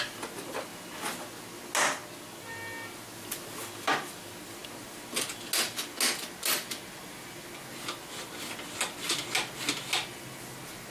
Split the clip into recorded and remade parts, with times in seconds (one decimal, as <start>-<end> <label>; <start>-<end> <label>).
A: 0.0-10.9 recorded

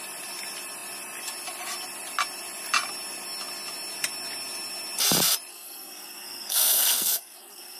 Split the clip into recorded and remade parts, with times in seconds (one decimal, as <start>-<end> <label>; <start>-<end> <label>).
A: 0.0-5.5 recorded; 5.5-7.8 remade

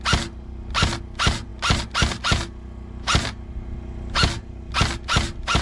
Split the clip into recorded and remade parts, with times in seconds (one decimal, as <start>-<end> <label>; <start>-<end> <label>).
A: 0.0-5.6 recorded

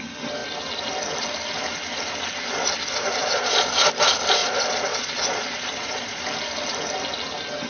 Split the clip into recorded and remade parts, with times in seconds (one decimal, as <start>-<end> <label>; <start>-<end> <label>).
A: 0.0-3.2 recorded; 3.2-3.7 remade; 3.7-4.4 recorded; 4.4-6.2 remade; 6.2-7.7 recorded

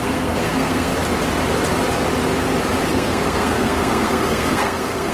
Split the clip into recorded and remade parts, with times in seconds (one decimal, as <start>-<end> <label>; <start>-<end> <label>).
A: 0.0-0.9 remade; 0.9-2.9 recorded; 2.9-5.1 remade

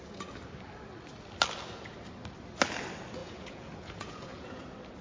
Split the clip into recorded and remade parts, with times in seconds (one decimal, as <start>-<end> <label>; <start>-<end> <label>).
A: 0.0-3.2 recorded; 3.2-4.6 remade; 4.6-5.0 recorded

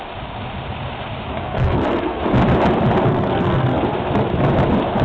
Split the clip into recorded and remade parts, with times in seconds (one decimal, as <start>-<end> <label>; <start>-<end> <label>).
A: 0.0-1.3 recorded; 1.3-2.2 remade; 2.2-3.1 recorded; 3.1-3.8 remade; 3.8-5.0 recorded